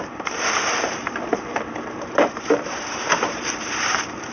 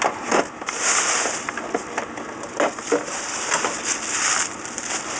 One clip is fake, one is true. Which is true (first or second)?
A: second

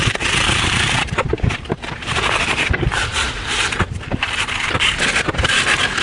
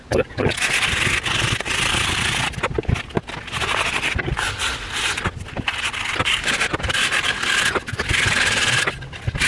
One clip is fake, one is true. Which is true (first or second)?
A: second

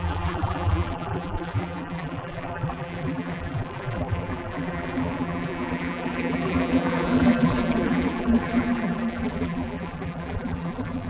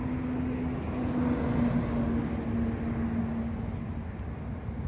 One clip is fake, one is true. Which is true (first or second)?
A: second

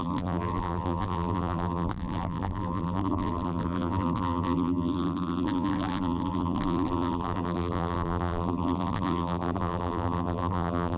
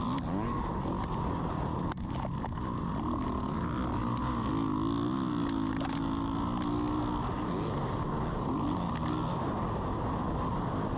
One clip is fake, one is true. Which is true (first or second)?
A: second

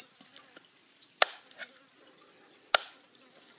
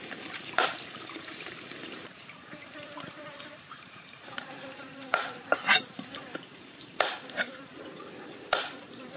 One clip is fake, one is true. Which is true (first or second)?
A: first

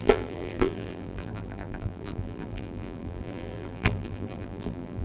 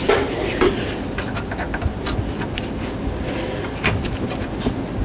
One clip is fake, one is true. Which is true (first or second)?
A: second